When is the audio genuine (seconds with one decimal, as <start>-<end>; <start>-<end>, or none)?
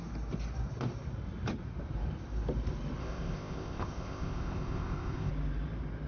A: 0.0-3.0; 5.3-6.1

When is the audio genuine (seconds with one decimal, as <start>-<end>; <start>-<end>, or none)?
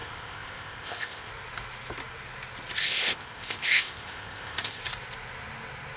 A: 1.3-2.8; 4.8-6.0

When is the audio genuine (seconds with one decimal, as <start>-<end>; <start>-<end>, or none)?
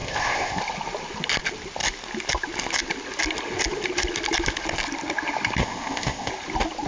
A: 0.6-5.6; 6.3-6.9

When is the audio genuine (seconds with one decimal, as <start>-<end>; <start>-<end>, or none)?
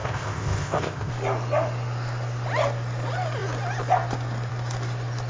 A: 1.1-5.3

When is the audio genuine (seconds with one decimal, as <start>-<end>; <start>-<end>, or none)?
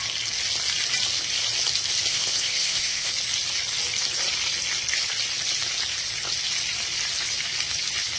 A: 0.0-2.1; 3.1-8.2